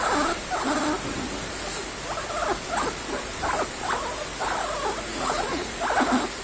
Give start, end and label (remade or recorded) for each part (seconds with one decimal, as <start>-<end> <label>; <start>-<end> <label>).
0.0-5.1 recorded; 5.1-5.8 remade; 5.8-6.4 recorded